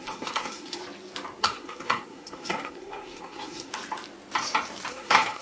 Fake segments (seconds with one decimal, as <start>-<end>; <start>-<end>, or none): 0.0-0.8; 1.4-3.7; 4.9-5.4